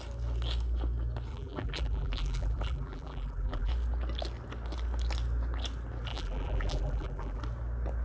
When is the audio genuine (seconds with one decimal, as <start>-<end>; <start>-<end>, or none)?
0.0-1.3; 3.7-6.1; 7.4-8.0